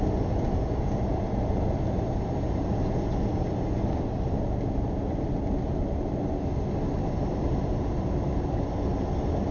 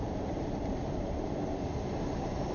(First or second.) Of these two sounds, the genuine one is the first